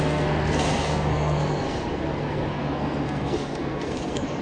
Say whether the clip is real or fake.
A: fake